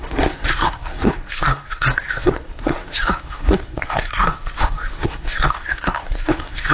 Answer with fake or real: fake